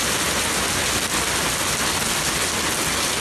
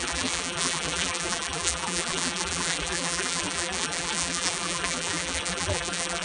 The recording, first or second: first